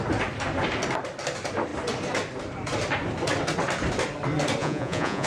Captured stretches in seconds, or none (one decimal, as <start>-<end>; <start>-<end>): 0.0-4.6